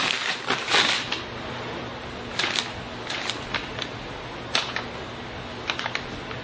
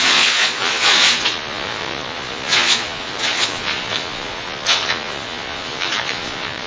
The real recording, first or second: first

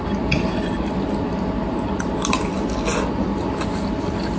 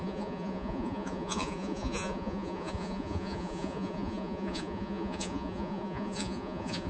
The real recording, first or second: first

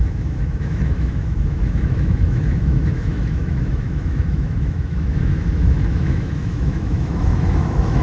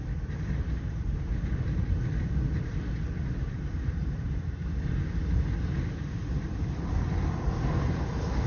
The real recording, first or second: second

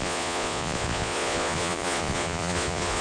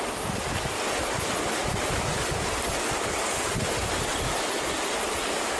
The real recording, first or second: second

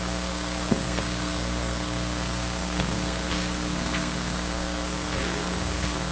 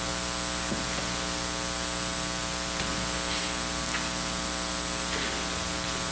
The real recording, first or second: second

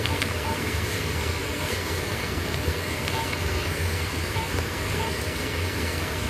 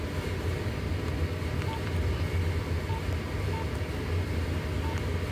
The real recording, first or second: second